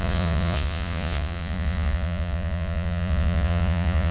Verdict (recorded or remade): remade